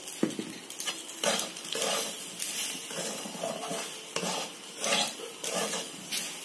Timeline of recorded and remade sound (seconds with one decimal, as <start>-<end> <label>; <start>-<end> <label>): 0.0-6.4 recorded